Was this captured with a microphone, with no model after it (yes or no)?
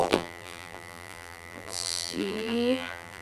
no